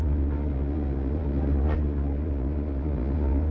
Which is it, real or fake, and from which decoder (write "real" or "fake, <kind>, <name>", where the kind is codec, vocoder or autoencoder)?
fake, vocoder, Vocos